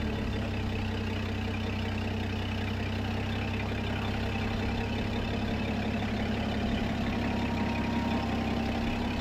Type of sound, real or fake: real